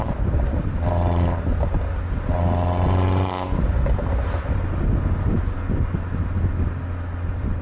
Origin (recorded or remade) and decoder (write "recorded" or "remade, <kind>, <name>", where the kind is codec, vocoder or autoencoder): recorded